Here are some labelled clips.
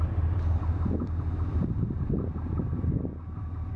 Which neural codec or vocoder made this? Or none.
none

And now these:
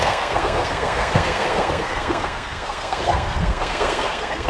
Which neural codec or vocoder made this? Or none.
codec, SNAC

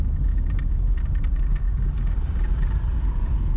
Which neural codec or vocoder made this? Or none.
none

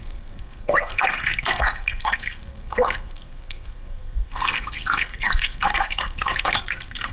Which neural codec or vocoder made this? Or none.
codec, SNAC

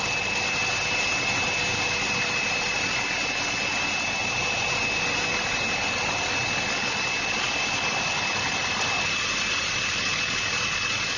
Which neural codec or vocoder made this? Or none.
none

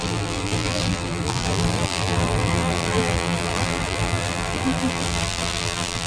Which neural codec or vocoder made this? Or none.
vocoder, BigVGAN v2